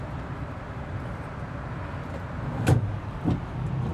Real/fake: real